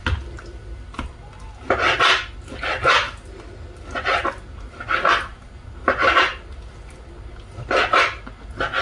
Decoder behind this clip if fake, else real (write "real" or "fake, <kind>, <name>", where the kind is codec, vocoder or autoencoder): real